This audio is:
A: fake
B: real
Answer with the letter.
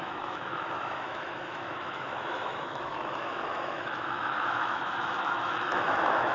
A